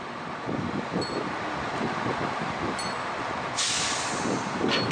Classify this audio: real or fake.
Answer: real